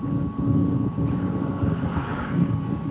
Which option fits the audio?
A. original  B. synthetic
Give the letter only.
B